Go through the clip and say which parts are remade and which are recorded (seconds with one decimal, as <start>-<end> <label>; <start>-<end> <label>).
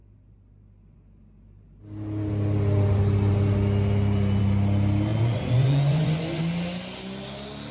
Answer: 0.0-5.1 recorded; 5.1-6.4 remade; 6.4-7.7 recorded